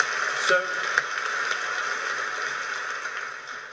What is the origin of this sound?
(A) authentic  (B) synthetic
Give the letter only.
A